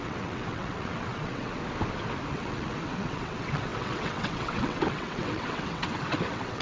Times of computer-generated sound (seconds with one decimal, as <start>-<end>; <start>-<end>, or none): 0.0-1.6; 2.3-6.6